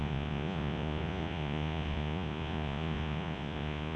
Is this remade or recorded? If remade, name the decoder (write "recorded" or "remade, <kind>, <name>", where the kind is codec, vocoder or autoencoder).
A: remade, vocoder, Vocos